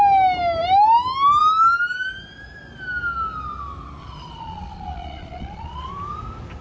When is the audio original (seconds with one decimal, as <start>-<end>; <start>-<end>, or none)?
0.0-4.0; 5.9-6.6